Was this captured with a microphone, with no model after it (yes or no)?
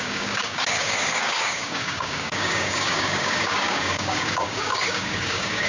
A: no